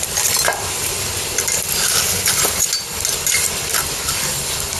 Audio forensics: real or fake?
real